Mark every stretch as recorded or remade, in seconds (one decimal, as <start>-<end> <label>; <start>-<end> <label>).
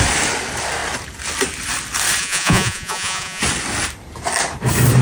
0.0-2.2 recorded; 2.2-3.4 remade; 3.4-5.0 recorded